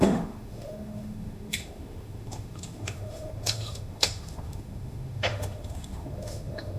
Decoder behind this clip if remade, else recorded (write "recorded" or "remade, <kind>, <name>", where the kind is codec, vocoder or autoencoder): remade, autoencoder, DAC-VAE